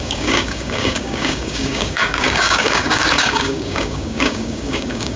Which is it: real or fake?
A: fake